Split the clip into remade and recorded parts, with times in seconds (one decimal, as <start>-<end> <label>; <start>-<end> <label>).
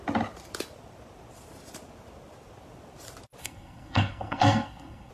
0.0-3.4 recorded; 3.4-5.1 remade